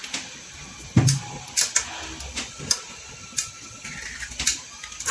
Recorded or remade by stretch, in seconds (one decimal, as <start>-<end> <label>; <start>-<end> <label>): 0.0-5.1 recorded